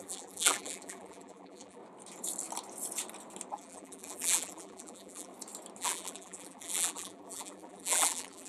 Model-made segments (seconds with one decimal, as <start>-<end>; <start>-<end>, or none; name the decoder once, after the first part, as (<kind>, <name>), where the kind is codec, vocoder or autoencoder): 0.0-1.8 (vocoder, BigVGAN v2); 3.5-5.3; 5.8-8.5